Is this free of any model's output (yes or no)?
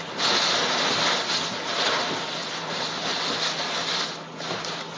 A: yes